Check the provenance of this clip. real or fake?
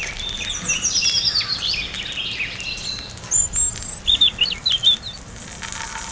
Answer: real